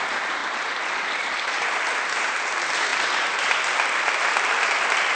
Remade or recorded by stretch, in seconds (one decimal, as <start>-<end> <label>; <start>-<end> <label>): 0.0-5.2 recorded